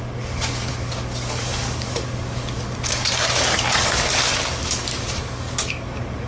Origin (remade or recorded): remade